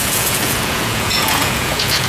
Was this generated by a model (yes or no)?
yes